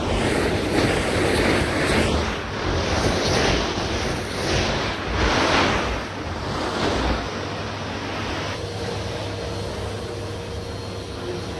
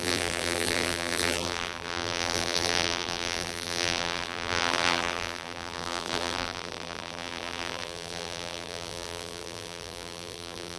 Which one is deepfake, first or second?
second